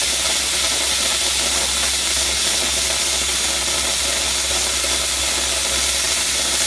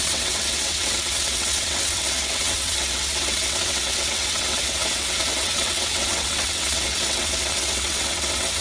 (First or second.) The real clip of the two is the first